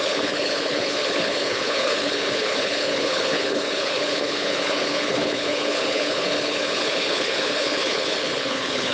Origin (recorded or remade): remade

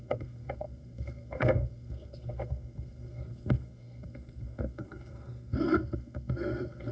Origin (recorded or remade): remade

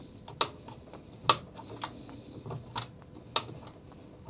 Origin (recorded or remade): recorded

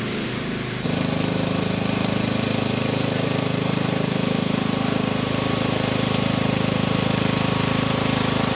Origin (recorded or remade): remade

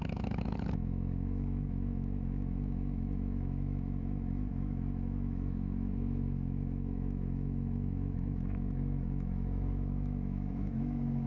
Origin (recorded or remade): remade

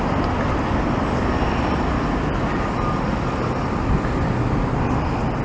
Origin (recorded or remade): recorded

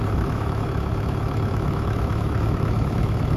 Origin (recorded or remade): remade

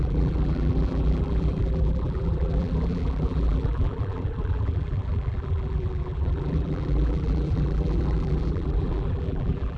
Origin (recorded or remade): remade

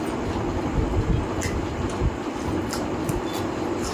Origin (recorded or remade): recorded